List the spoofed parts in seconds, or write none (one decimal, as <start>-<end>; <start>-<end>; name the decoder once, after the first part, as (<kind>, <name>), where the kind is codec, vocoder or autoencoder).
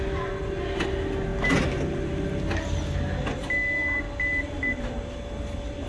none